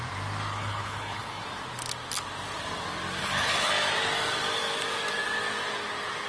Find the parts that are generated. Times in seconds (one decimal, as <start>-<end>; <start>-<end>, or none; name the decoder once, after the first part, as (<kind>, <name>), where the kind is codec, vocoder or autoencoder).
0.5-1.4 (codec, HILCodec); 3.2-3.7